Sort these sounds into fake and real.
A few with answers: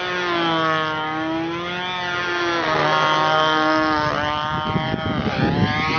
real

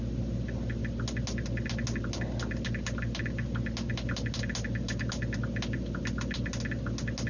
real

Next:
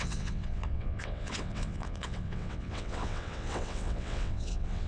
fake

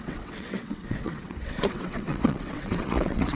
fake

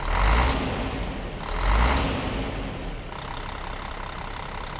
real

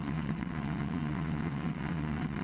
fake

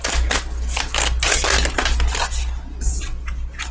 real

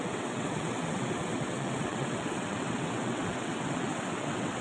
fake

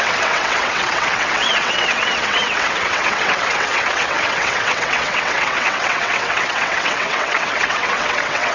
fake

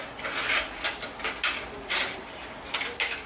real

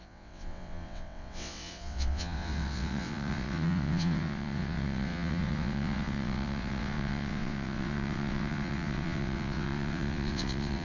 fake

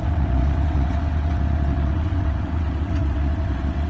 fake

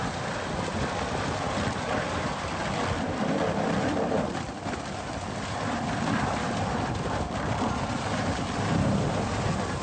real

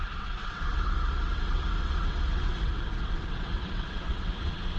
fake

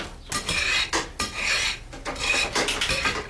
real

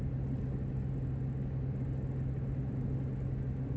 real